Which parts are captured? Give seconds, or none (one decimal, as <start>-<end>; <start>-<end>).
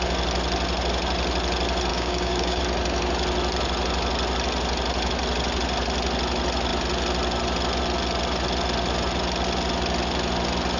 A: 0.0-1.9; 2.6-10.8